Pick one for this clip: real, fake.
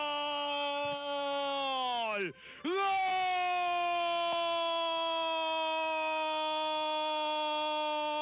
real